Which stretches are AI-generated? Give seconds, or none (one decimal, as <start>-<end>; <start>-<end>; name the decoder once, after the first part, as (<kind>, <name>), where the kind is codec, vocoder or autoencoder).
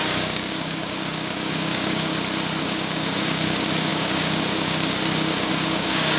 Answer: 0.0-2.1 (codec, DAC); 2.6-6.2